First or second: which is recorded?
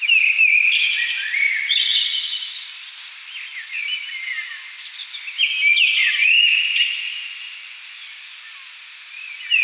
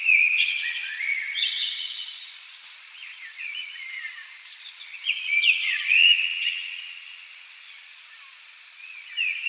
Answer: first